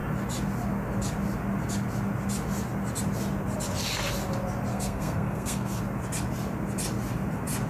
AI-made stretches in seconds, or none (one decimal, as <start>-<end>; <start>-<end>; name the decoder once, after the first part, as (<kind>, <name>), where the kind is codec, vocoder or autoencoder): 4.7-5.8 (codec, SNAC)